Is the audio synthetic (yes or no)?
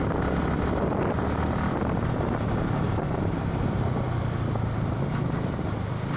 no